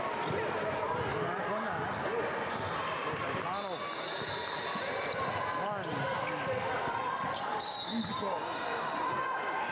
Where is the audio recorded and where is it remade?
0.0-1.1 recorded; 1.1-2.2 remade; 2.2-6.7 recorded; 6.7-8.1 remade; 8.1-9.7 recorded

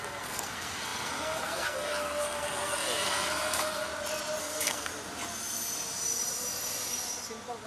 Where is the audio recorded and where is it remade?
0.0-3.9 remade; 3.9-4.4 recorded; 4.4-4.9 remade; 4.9-7.7 recorded

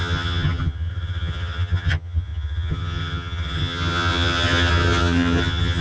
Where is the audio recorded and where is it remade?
0.0-5.8 remade

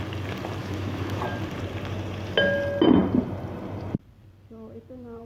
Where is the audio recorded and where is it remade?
0.0-0.6 recorded; 0.6-1.2 remade; 1.2-5.2 recorded

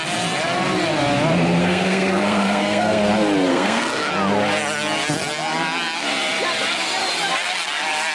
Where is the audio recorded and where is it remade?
0.0-1.6 recorded; 1.6-3.0 remade; 3.0-3.5 recorded; 3.5-4.1 remade; 4.1-8.1 recorded

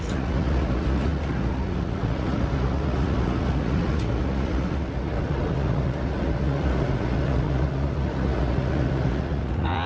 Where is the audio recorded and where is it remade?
0.0-9.9 remade